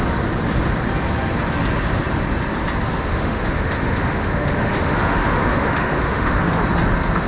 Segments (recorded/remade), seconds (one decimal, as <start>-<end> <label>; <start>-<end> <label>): 0.0-3.1 recorded; 3.1-6.6 remade; 6.6-7.3 recorded